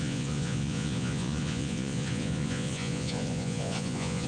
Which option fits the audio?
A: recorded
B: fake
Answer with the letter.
B